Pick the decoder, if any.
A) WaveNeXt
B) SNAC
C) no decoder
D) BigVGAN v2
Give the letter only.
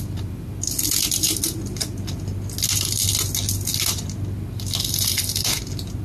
C